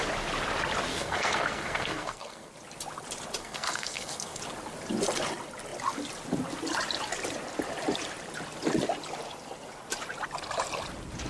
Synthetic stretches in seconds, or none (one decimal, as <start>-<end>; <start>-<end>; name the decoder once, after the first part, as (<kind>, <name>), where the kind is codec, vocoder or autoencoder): 0.9-2.5 (codec, SNAC); 3.4-4.4

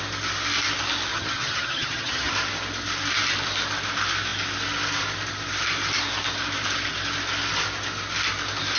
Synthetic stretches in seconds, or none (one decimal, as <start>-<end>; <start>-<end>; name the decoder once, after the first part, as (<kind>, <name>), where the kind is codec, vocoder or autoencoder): 1.1-2.3 (vocoder, HiFi-GAN)

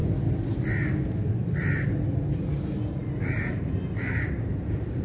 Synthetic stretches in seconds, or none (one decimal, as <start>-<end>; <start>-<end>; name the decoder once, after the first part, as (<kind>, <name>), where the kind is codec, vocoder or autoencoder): 3.0-5.0 (vocoder, BigVGAN v2)

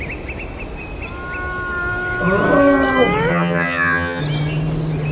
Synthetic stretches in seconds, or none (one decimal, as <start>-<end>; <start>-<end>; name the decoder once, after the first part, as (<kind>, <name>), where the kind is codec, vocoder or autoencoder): 3.3-4.2 (vocoder, HiFi-GAN)

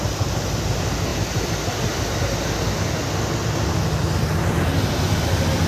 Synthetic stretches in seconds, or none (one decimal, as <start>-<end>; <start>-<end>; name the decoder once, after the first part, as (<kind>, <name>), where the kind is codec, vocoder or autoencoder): none

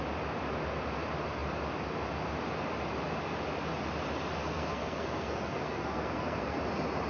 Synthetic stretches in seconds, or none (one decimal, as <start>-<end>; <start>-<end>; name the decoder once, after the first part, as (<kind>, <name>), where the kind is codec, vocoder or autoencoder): 4.4-6.6 (codec, SNAC)

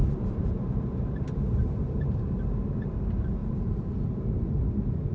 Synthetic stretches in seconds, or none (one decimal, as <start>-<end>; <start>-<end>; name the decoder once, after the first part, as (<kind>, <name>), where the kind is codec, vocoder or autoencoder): 0.0-2.3 (vocoder, BigVGAN v2); 3.4-3.9

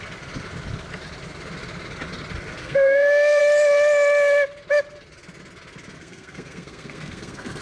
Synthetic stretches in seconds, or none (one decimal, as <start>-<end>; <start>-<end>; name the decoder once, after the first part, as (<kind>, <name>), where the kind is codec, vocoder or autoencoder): 2.6-3.4 (codec, SNAC); 6.0-7.6